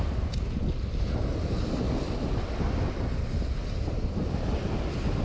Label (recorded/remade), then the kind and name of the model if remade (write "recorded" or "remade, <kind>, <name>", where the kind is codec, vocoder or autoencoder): recorded